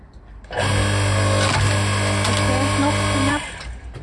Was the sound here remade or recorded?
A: recorded